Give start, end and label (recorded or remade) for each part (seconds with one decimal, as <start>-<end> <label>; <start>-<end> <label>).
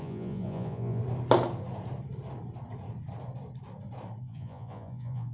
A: 0.0-1.0 remade; 1.0-4.2 recorded; 4.2-5.3 remade